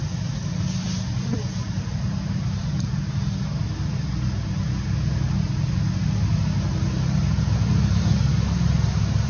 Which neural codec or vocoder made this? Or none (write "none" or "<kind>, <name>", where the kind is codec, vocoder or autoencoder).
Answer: none